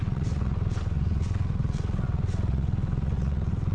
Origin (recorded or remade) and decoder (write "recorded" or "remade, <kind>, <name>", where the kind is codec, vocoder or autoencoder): remade, vocoder, WaveNeXt